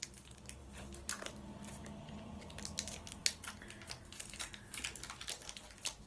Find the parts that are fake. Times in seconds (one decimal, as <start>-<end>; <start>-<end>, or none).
none